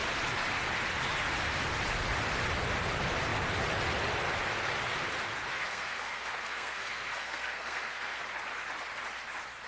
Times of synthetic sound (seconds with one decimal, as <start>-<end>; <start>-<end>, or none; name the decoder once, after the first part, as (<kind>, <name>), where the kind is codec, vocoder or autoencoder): 5.5-8.2 (codec, SNAC)